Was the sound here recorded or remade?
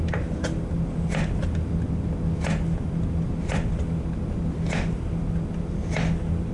recorded